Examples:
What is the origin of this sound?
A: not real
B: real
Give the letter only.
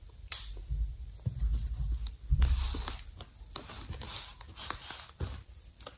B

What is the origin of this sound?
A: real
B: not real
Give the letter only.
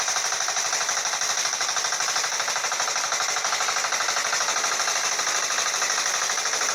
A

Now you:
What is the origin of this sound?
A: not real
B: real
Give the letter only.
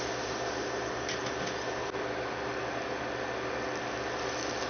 B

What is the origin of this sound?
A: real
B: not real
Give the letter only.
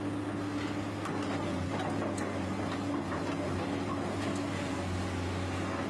A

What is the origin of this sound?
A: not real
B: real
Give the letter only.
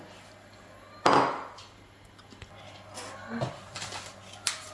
B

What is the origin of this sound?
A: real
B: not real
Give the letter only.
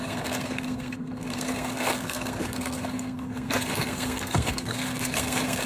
B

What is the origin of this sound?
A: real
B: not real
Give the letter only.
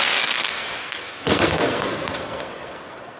B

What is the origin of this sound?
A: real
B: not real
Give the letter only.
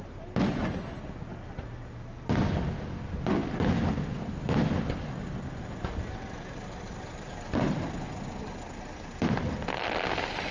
A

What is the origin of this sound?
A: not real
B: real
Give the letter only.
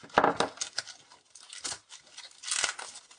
B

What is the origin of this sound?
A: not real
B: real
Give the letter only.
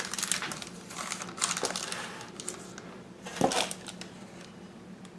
B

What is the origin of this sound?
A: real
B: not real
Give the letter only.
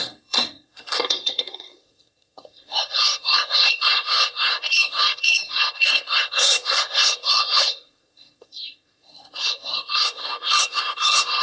B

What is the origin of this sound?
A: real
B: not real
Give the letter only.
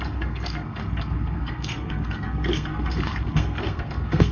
B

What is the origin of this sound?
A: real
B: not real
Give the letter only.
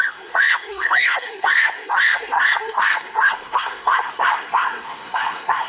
B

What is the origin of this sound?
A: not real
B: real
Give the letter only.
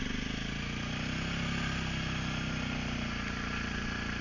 B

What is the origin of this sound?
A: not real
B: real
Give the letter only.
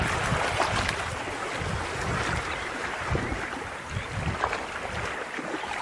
B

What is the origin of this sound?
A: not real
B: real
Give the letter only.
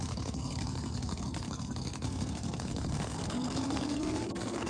A